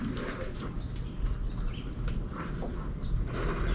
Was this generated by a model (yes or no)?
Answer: no